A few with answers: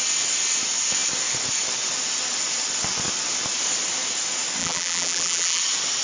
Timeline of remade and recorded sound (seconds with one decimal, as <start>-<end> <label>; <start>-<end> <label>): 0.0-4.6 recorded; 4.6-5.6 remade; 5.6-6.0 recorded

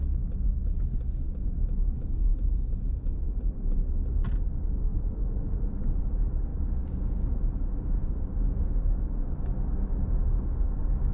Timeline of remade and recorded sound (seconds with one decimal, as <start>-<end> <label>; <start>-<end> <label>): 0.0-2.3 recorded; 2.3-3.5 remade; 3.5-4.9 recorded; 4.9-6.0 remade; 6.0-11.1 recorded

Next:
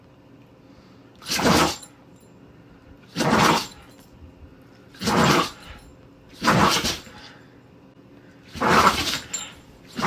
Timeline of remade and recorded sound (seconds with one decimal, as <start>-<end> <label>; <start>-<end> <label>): 0.0-10.1 recorded